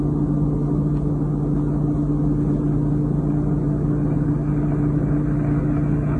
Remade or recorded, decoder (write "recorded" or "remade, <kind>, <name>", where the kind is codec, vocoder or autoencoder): recorded